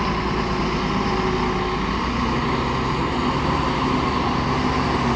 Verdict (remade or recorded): recorded